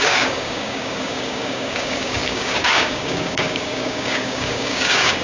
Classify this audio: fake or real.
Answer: fake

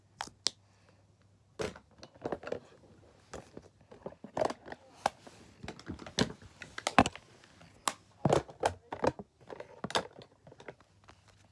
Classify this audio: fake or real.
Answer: real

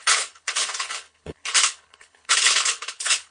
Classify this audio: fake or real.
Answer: fake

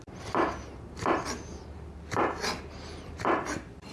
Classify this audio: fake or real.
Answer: real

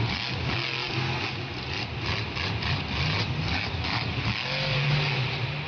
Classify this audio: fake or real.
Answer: real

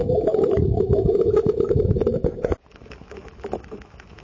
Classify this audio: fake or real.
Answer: fake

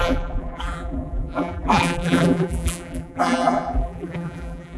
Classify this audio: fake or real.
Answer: fake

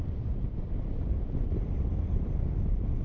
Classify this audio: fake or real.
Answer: real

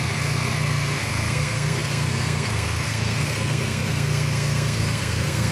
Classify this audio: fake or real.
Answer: fake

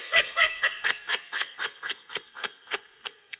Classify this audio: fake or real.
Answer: fake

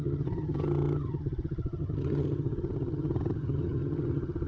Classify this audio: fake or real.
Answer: fake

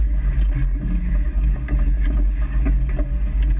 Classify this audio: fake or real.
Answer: real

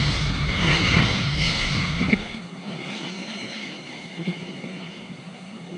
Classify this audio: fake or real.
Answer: fake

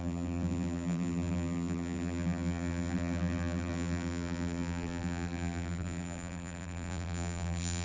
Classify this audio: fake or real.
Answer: fake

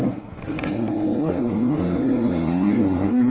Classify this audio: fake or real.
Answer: fake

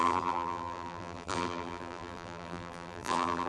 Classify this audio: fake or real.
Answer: fake